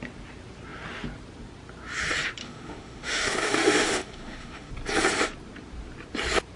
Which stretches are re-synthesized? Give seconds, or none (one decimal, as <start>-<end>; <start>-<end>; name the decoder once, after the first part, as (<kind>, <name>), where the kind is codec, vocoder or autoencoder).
2.4-4.7 (autoencoder, DAC-VAE)